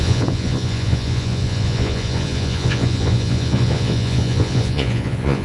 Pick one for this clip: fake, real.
fake